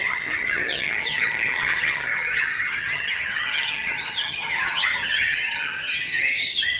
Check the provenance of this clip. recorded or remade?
remade